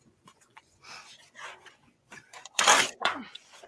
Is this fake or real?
fake